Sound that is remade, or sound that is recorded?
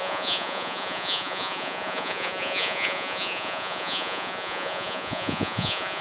remade